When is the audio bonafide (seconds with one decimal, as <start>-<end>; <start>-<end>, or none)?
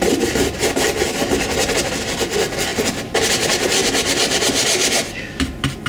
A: 0.0-5.9